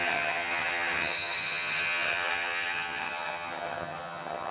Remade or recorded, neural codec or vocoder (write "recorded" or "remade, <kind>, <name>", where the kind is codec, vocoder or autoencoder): remade, vocoder, HiFi-GAN